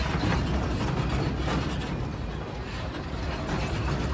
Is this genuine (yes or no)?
yes